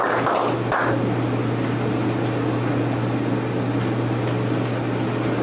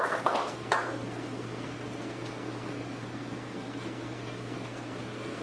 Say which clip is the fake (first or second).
second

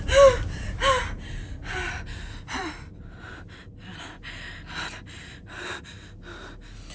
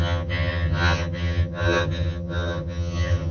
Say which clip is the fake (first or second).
second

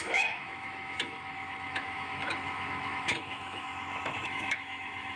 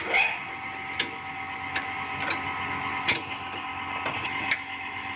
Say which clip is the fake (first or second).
first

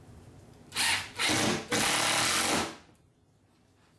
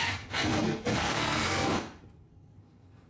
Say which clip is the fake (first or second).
second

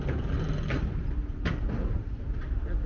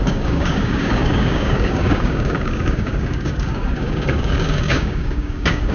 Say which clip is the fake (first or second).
second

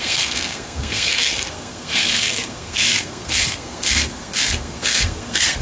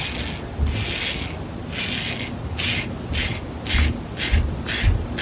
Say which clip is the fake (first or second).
first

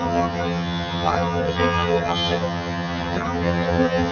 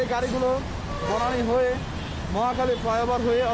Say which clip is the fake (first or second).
first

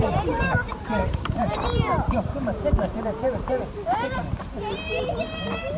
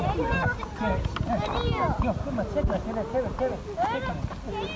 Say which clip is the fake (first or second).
first